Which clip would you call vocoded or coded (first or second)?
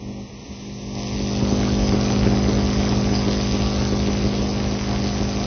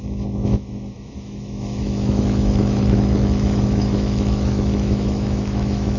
second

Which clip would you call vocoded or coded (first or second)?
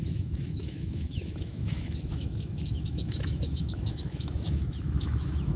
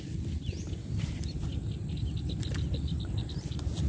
first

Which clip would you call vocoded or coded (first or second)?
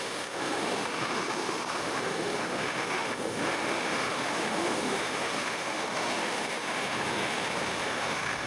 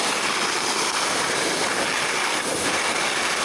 first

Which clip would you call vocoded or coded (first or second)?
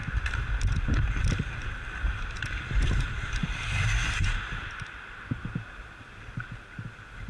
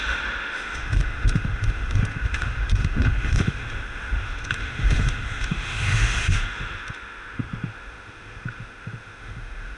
second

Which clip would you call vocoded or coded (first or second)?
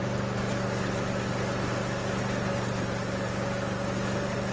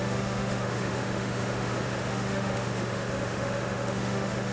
second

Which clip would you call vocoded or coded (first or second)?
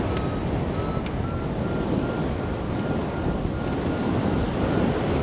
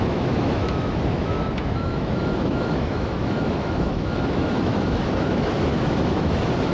second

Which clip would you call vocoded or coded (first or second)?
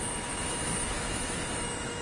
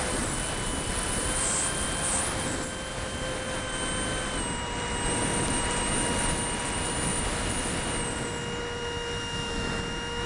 first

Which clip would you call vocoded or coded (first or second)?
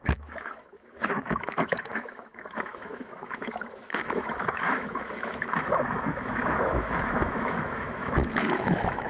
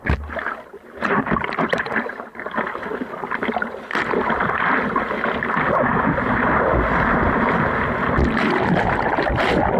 first